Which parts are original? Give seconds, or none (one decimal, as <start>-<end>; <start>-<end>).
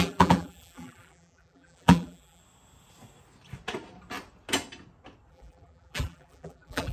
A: 2.4-5.3